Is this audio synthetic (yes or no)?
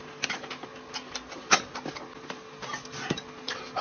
no